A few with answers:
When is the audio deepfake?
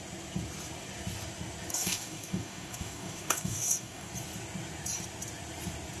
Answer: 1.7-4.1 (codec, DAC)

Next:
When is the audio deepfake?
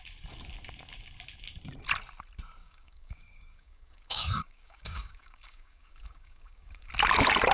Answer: 2.6-6.9 (codec, DAC)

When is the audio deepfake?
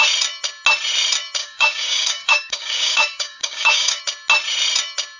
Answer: 1.4-4.0 (codec, DAC)